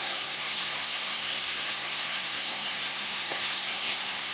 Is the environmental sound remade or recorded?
remade